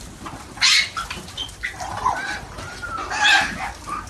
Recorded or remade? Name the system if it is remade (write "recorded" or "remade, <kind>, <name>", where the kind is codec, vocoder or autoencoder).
recorded